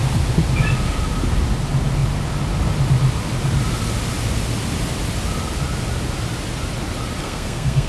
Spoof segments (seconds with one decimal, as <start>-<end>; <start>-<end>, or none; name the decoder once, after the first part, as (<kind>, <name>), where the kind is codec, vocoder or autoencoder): 7.2-7.9 (codec, SNAC)